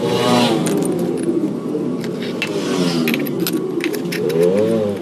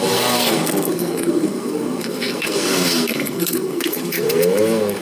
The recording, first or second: first